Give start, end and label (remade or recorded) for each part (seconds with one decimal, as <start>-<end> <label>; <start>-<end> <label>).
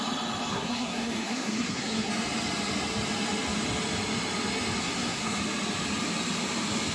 0.0-0.5 recorded; 0.5-2.1 remade; 2.1-4.8 recorded; 4.8-5.4 remade; 5.4-6.9 recorded